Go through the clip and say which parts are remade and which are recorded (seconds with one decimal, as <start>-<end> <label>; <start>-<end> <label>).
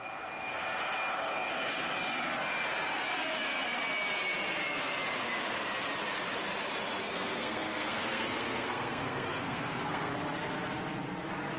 0.0-7.0 recorded; 7.0-10.1 remade; 10.1-11.6 recorded